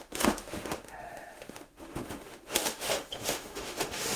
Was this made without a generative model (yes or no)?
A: no